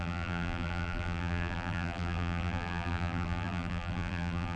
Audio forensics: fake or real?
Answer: fake